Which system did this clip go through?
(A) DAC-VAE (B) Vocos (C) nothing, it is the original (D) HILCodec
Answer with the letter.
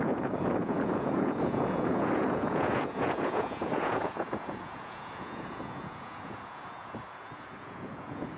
B